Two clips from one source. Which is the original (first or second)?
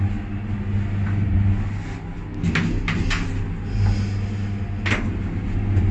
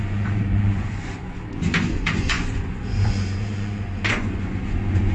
first